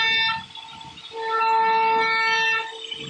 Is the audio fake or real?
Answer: real